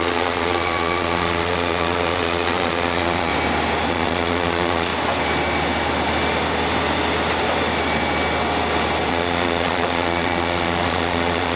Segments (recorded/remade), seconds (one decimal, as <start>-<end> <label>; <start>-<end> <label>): 0.0-3.3 remade; 3.3-3.9 recorded; 3.9-4.9 remade; 4.9-9.1 recorded; 9.1-11.6 remade